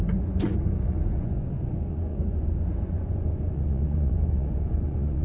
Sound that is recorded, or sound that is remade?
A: remade